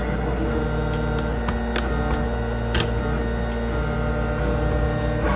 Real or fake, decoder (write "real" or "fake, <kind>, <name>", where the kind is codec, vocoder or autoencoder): real